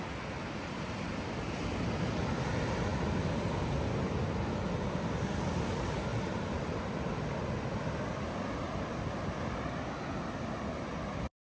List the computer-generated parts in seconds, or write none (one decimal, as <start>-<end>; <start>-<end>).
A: none